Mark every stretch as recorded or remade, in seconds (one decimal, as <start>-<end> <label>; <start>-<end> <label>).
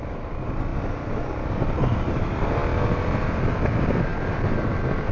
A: 0.0-5.1 recorded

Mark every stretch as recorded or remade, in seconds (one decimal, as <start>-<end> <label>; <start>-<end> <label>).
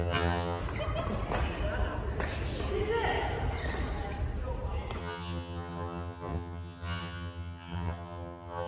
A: 0.0-0.6 remade; 0.6-5.0 recorded; 5.0-8.7 remade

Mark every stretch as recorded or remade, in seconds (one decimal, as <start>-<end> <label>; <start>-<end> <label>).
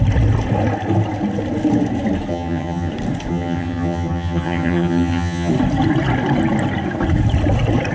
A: 0.0-2.3 recorded; 2.3-2.9 remade; 2.9-3.3 recorded; 3.3-5.5 remade; 5.5-7.9 recorded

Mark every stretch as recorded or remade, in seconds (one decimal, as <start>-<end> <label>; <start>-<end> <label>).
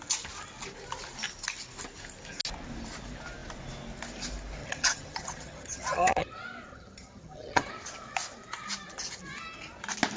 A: 0.0-4.6 recorded; 4.6-6.3 remade; 6.3-6.7 recorded; 6.7-7.7 remade; 7.7-10.2 recorded